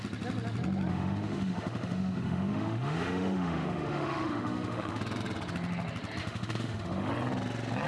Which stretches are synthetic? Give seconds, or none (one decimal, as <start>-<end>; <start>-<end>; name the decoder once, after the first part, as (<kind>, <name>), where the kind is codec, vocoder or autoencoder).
0.9-5.0 (autoencoder, DAC-VAE); 6.2-7.1